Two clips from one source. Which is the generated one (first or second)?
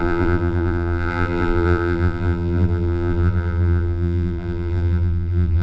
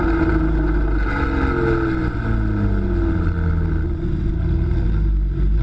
first